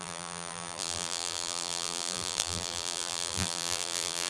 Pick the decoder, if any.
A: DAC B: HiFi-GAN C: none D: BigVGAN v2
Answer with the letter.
D